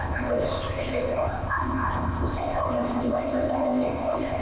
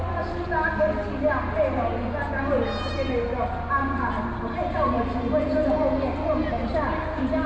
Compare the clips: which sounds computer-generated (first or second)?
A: first